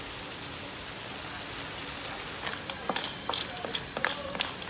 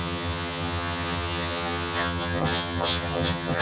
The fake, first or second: second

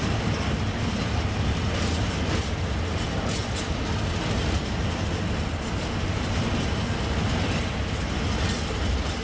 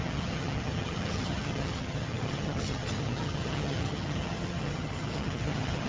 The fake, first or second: second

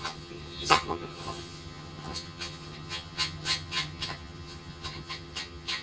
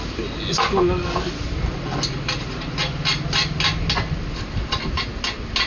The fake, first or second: first